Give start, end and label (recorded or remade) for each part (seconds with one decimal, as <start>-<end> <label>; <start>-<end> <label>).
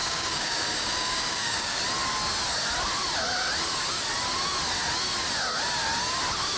0.0-1.8 remade; 1.8-6.6 recorded